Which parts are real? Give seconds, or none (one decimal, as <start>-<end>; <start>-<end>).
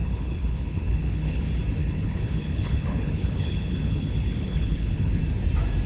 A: 1.4-1.8; 5.2-5.9